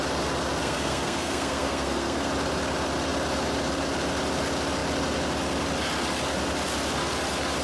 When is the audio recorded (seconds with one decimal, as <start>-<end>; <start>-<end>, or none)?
0.0-0.6; 2.3-7.6